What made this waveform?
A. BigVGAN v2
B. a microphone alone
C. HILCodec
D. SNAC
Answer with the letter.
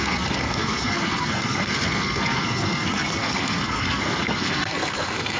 D